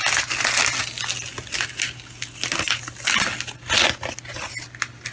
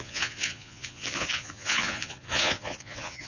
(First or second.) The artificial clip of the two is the second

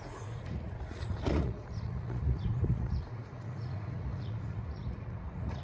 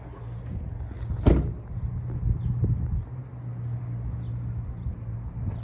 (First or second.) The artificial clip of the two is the first